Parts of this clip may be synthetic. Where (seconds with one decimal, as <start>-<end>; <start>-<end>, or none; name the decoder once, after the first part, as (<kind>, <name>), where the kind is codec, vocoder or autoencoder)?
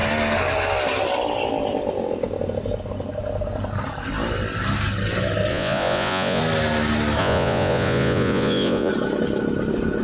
5.5-6.4 (vocoder, Vocos); 7.2-8.9